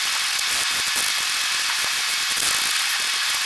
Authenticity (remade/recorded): recorded